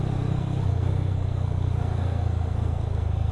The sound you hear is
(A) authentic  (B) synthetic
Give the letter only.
B